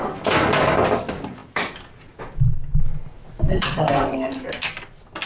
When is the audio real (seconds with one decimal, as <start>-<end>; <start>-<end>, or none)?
0.0-3.5; 4.7-5.3

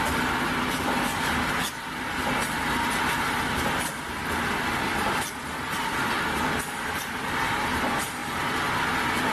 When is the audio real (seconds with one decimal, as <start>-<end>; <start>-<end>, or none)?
0.0-9.3

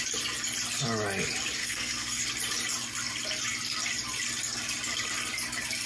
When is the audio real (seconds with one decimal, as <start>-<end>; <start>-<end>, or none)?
0.0-1.6; 2.2-5.9

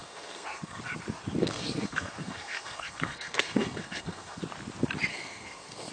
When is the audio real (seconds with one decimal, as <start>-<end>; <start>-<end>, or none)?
0.8-1.4; 4.4-5.1

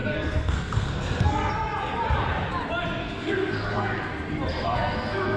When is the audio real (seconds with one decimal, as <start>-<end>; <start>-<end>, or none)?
1.5-3.0; 4.1-4.5

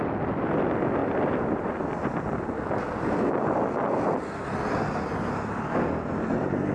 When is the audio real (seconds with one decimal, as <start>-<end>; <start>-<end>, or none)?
0.0-6.7

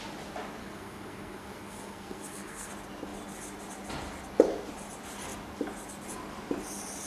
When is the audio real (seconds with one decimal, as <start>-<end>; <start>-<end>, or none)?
0.0-0.6; 2.7-7.1

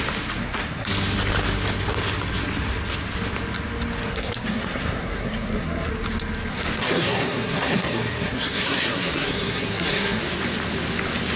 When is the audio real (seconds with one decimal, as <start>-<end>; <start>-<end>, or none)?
0.0-0.4; 0.9-4.1; 5.9-6.5; 10.2-11.4